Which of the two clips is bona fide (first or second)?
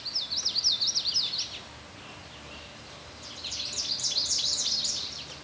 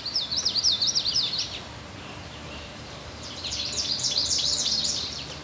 first